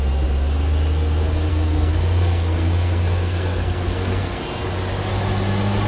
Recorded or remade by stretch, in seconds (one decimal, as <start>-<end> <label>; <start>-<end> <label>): 0.0-1.5 recorded; 1.5-4.4 remade; 4.4-5.9 recorded